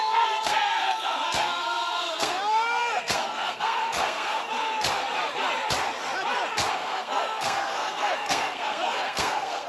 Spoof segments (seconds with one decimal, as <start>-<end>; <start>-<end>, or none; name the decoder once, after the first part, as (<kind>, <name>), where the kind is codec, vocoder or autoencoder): 0.0-4.4 (codec, SNAC); 6.7-9.7